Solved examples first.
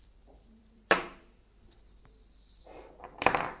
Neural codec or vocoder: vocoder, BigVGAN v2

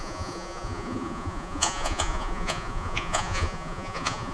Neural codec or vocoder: vocoder, Vocos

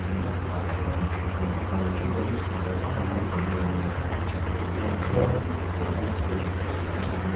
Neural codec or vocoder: none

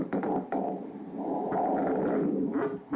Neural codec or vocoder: none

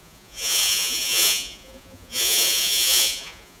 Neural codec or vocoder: vocoder, Vocos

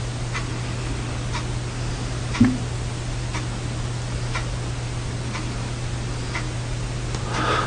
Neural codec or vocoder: none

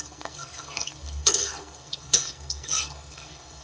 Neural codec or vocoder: codec, SNAC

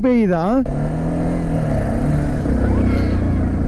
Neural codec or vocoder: none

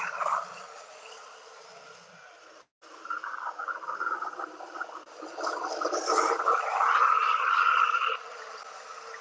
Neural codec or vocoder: none